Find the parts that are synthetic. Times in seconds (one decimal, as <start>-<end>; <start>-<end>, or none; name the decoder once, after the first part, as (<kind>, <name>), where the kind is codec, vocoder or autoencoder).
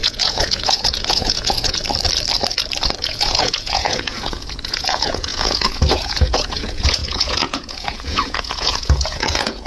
0.0-1.8 (vocoder, Vocos); 3.0-9.7